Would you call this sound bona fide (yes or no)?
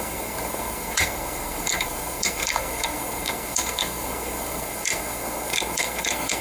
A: no